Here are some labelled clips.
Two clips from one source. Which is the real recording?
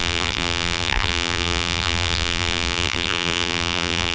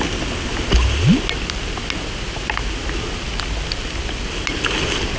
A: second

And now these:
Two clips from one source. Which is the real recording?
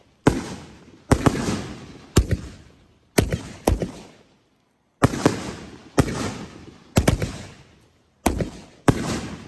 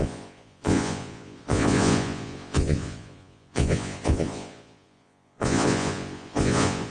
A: first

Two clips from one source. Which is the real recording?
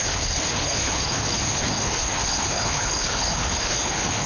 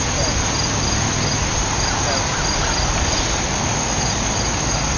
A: second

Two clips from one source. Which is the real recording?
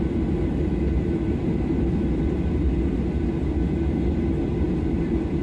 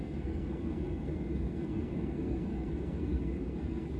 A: first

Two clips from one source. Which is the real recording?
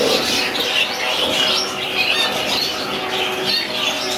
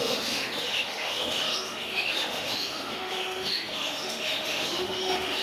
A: first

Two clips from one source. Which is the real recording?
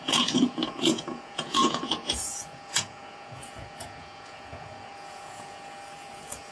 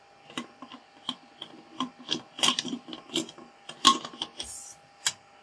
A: second